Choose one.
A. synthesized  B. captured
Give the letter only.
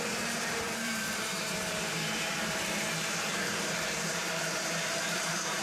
A